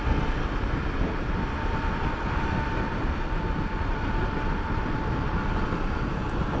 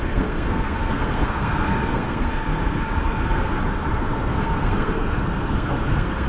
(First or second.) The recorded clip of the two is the first